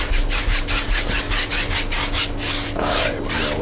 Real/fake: real